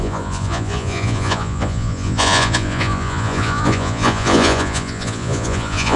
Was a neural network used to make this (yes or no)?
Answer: yes